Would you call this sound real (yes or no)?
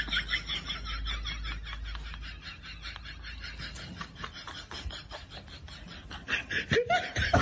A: yes